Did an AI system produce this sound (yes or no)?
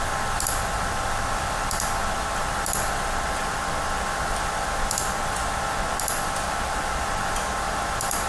yes